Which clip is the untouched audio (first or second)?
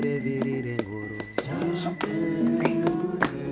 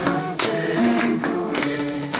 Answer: first